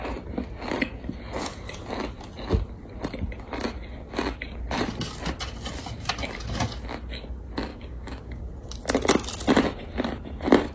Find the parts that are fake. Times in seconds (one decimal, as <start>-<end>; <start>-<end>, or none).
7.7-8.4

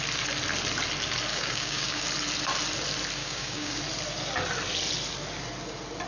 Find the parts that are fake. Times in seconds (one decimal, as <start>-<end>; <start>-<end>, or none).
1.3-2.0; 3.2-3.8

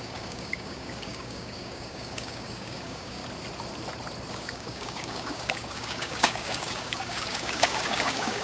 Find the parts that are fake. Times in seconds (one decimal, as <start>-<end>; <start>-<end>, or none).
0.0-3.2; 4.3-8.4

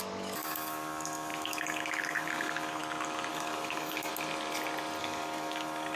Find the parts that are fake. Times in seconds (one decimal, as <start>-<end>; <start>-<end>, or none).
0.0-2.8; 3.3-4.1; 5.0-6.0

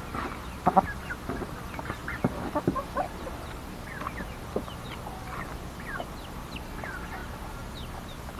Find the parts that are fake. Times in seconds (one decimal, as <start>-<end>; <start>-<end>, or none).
none

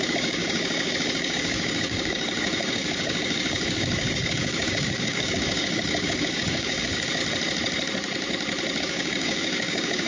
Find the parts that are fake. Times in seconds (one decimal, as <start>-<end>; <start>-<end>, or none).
0.0-7.2; 8.8-10.1

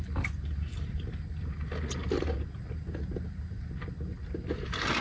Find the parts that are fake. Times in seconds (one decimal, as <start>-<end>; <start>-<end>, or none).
none